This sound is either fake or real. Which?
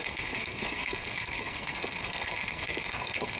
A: fake